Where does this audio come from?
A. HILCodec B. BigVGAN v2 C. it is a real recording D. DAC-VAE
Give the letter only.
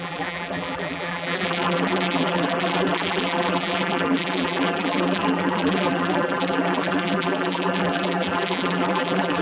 B